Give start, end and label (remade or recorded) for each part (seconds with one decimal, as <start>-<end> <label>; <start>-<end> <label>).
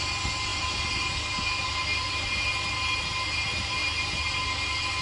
0.0-5.0 recorded